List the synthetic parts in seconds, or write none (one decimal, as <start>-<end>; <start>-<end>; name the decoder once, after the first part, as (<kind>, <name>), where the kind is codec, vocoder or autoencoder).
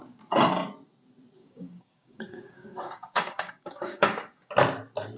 1.4-4.5 (codec, DAC)